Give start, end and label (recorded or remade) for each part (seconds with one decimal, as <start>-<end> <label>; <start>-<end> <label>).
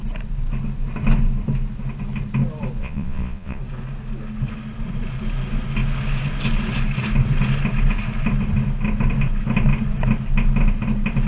0.0-2.8 recorded; 2.8-3.6 remade; 3.6-11.3 recorded